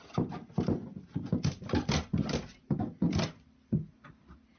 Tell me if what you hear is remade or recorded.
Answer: recorded